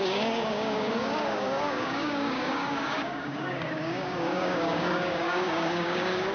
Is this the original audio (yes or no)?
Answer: no